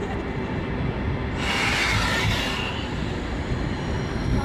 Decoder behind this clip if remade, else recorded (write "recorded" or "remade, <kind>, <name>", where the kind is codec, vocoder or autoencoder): recorded